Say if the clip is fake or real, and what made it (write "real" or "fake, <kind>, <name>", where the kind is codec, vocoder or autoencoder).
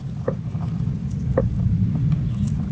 real